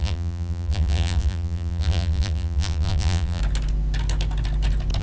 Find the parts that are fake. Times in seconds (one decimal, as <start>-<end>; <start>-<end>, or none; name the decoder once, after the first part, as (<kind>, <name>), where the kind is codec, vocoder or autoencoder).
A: 0.0-3.4 (vocoder, BigVGAN v2)